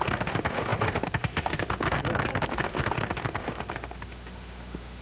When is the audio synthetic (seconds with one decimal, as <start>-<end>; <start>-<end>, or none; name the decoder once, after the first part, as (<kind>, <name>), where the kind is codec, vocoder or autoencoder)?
0.0-2.0 (autoencoder, DAC-VAE); 2.5-5.0